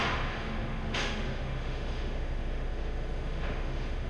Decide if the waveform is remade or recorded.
remade